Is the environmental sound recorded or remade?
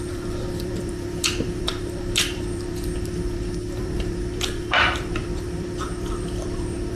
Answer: remade